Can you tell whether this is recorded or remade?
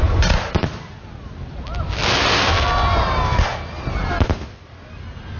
recorded